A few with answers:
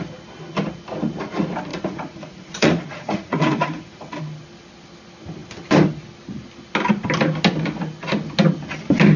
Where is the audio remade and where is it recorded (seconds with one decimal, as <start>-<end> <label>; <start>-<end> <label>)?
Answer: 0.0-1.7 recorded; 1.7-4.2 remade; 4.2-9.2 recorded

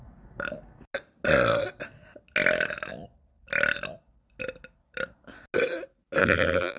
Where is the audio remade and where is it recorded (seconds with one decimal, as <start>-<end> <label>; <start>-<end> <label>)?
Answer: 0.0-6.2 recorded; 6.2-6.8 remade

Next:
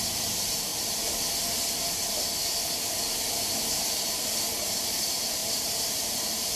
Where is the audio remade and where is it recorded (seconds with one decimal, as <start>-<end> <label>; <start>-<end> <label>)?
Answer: 0.0-0.7 remade; 0.7-4.7 recorded; 4.7-6.6 remade